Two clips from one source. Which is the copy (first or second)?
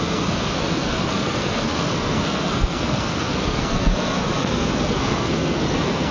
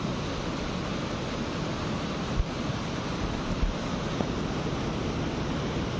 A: first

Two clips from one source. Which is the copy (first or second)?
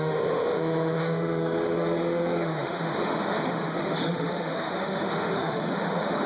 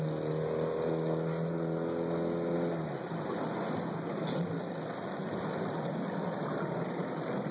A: first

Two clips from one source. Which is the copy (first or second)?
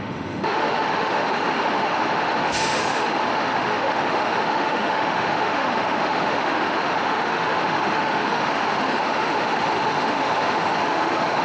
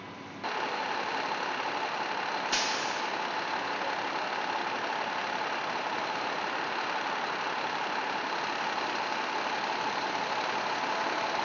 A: first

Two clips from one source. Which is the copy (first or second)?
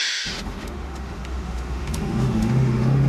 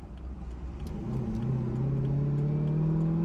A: first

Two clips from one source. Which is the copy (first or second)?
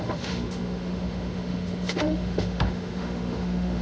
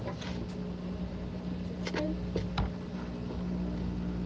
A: first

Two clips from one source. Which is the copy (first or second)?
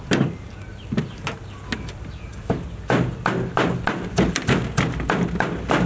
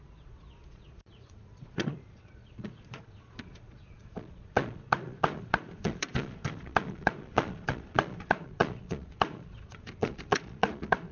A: second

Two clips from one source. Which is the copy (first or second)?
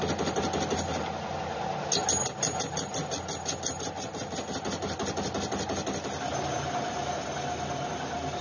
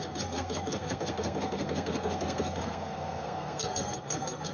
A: second